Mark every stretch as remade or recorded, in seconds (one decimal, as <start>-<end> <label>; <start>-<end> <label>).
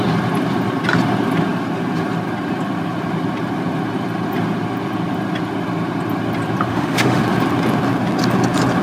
0.0-6.7 recorded; 6.7-7.2 remade; 7.2-8.8 recorded